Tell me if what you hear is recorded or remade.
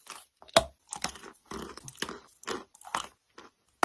recorded